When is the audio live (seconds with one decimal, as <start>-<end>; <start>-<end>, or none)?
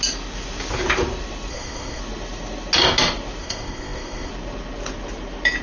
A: 0.0-1.5; 2.0-3.4; 4.3-5.6